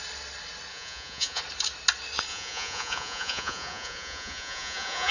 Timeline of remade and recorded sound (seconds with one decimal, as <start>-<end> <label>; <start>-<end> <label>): 0.0-0.7 recorded; 0.7-1.4 remade; 1.4-2.3 recorded; 2.3-5.1 remade